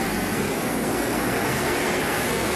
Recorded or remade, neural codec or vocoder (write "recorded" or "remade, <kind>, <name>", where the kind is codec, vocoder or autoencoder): remade, codec, SNAC